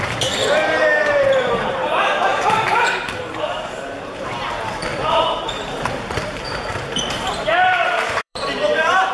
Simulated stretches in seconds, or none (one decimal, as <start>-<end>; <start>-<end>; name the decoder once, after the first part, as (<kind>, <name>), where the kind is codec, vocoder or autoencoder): 0.0-9.1 (vocoder, BigVGAN v2)